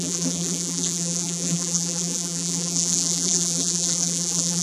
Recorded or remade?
remade